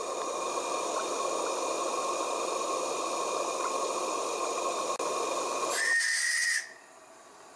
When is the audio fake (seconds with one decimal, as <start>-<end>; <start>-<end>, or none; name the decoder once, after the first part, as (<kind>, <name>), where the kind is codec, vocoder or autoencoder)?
none